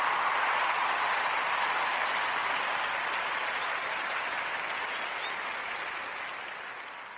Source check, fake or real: real